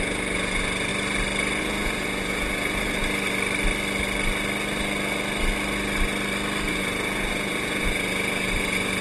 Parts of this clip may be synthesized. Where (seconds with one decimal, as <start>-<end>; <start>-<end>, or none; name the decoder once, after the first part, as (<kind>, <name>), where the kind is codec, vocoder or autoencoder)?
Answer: 0.0-0.9 (vocoder, Vocos); 1.6-3.0; 6.7-9.0